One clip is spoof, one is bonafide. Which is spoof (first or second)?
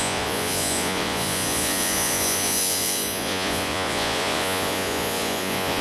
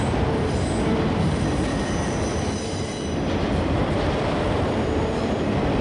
first